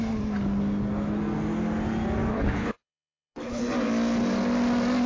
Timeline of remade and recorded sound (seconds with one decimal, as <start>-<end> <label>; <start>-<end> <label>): 0.0-2.3 recorded; 2.3-3.6 remade; 3.6-5.1 recorded